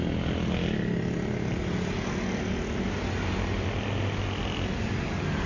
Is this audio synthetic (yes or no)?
no